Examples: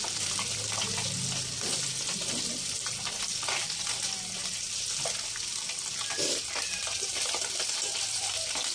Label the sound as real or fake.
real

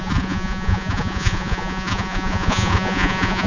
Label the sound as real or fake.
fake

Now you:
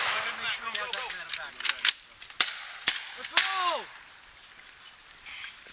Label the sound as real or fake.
real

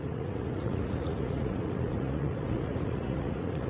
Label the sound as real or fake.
fake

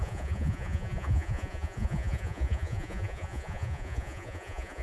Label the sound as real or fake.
fake